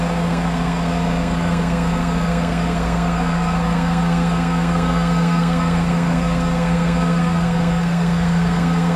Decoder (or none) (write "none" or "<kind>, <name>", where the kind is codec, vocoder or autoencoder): codec, SNAC